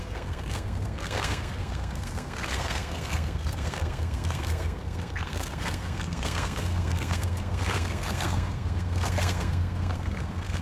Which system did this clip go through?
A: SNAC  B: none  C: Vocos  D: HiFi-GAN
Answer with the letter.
A